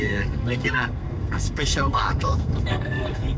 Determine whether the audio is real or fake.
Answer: fake